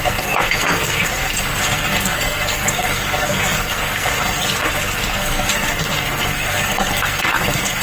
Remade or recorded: remade